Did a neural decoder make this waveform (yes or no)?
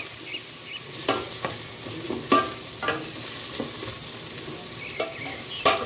no